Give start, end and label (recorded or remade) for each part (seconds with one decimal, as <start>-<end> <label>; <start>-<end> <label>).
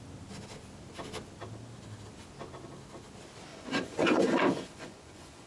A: 0.0-3.5 recorded; 3.5-5.5 remade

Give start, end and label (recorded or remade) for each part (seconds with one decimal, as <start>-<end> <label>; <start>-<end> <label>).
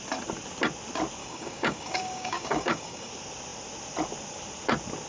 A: 0.0-1.2 recorded; 1.2-3.1 remade; 3.1-5.1 recorded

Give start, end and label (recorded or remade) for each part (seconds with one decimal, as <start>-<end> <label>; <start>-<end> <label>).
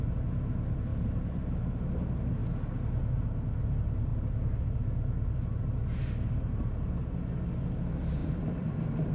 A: 0.0-0.9 recorded; 0.9-1.6 remade; 1.6-8.2 recorded; 8.2-9.1 remade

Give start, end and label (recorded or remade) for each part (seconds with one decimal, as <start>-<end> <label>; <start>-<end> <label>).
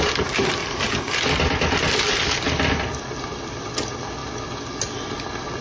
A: 0.0-0.6 recorded; 0.6-3.7 remade; 3.7-5.6 recorded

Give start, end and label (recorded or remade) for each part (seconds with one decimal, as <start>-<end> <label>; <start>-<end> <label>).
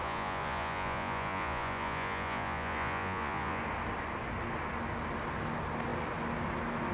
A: 0.0-3.6 remade; 3.6-6.9 recorded